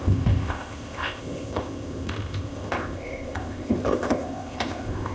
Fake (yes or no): yes